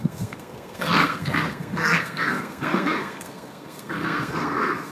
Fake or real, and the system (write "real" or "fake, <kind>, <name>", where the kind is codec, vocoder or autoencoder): fake, codec, SNAC